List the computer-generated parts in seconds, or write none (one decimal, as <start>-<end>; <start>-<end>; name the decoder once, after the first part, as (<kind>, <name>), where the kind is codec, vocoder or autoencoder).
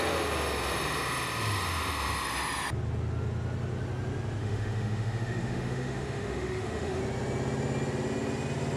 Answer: 4.4-7.0 (autoencoder, DAC-VAE)